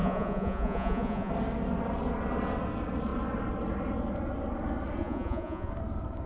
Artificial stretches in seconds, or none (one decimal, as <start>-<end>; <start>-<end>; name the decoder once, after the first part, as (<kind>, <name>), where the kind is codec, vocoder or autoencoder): 0.0-1.3 (vocoder, Vocos); 5.0-5.7